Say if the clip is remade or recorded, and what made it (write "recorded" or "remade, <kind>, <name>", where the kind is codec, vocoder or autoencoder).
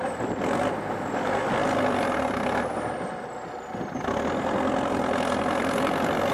recorded